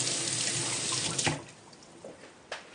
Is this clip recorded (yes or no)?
yes